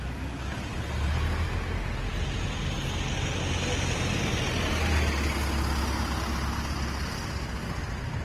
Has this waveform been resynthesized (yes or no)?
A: no